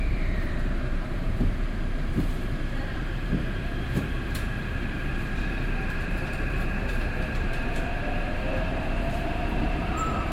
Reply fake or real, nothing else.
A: fake